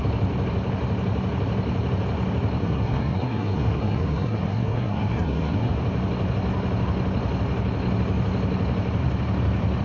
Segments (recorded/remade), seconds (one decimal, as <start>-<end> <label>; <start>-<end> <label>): 0.0-2.6 recorded; 2.6-5.7 remade; 5.7-9.8 recorded